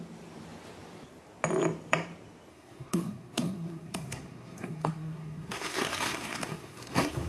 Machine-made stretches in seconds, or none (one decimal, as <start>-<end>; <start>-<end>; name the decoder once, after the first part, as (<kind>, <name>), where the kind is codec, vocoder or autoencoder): 2.5-7.3 (codec, SNAC)